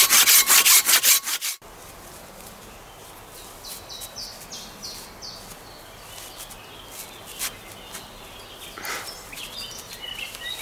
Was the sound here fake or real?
real